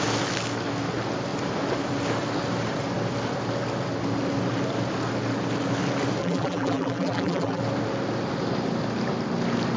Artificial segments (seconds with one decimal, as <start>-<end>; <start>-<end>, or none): 6.2-7.6